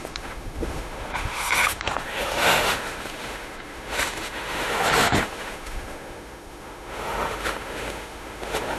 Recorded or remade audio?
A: remade